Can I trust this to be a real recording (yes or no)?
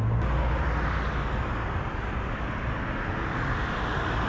yes